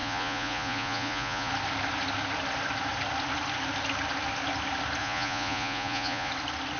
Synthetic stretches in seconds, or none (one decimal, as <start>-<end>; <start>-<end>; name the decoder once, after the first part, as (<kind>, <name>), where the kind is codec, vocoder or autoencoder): 0.0-1.5 (vocoder, Vocos); 5.0-6.3